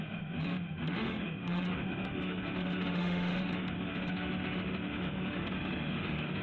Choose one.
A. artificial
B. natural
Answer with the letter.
A